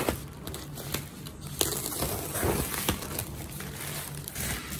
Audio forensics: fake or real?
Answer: real